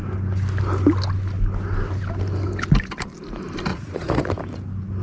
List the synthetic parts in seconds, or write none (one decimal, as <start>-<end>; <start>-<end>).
3.7-4.2